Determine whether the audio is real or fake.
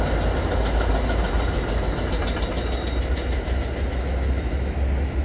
real